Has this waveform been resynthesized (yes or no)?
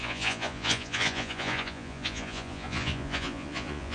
yes